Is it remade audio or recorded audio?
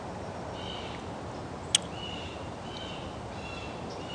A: recorded